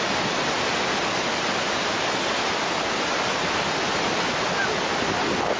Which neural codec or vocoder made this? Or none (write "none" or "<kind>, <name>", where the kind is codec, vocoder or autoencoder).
none